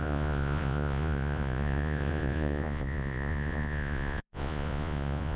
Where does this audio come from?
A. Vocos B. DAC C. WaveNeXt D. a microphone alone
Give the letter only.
A